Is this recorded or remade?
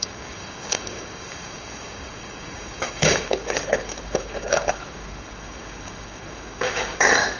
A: remade